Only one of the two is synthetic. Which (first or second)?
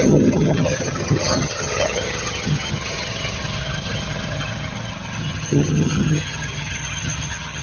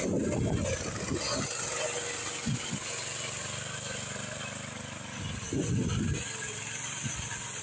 first